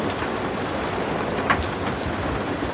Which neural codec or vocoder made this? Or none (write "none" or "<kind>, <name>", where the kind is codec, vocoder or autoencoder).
none